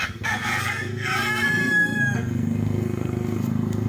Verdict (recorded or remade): remade